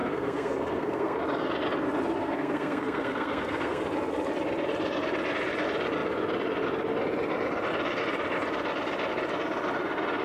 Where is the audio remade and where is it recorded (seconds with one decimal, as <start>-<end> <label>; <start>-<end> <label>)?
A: 0.0-1.2 remade; 1.2-2.2 recorded; 2.2-3.8 remade; 3.8-10.2 recorded